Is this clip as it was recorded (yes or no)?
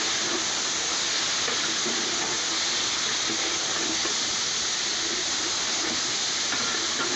yes